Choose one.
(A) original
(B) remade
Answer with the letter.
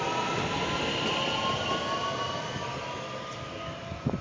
A